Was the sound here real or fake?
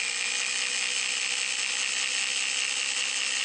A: real